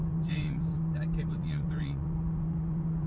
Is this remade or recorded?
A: remade